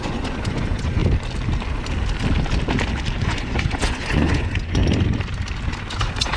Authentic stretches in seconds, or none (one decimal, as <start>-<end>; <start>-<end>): 1.0-3.2; 4.8-5.9